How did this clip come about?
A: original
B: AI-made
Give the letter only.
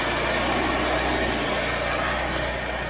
A